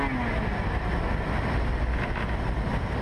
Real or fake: real